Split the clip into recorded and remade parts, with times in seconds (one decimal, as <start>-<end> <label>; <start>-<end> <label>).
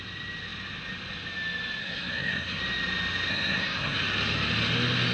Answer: 0.0-1.8 recorded; 1.8-2.6 remade; 2.6-3.3 recorded; 3.3-4.0 remade; 4.0-5.1 recorded